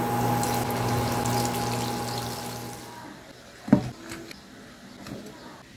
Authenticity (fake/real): real